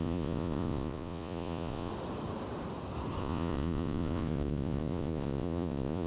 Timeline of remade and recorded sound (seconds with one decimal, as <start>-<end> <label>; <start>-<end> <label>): 0.0-1.9 remade; 1.9-3.2 recorded; 3.2-6.1 remade